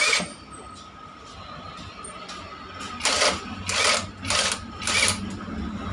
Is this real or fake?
real